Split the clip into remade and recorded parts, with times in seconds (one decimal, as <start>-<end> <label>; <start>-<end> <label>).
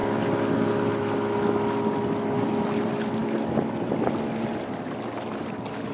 0.0-5.9 recorded